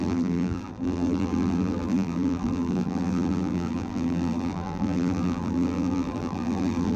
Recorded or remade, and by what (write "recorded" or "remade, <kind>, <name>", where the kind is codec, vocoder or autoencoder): remade, vocoder, BigVGAN v2